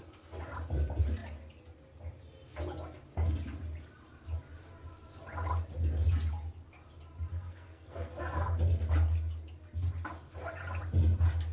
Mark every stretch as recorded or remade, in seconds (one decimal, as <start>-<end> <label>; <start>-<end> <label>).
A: 0.0-7.3 recorded; 7.3-8.6 remade; 8.6-11.5 recorded